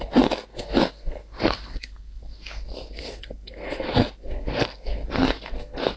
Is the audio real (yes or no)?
no